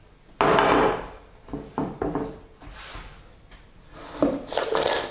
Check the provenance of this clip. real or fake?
real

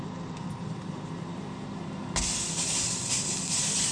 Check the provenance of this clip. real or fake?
real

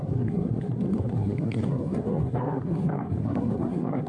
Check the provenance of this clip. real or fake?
fake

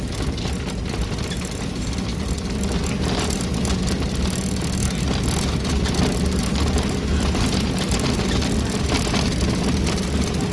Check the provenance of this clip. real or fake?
real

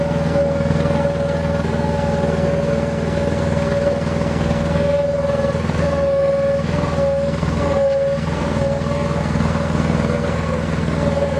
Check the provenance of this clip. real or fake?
fake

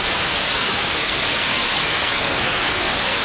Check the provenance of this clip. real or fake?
fake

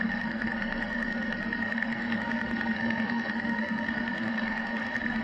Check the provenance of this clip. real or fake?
fake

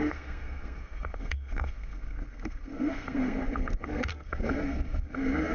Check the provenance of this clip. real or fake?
fake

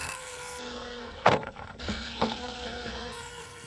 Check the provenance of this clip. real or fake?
fake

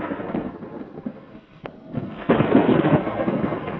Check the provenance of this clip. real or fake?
fake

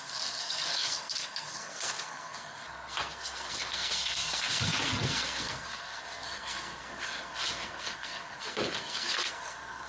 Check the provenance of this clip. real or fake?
fake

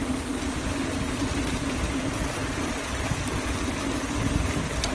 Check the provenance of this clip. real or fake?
real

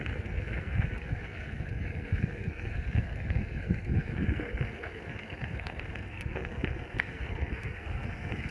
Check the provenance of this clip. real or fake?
fake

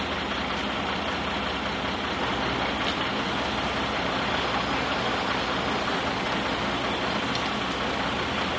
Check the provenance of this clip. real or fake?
real